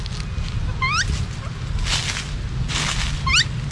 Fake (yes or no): no